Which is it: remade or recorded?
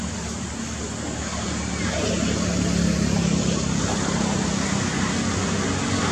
recorded